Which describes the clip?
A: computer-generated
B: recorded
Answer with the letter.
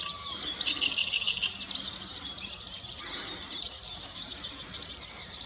A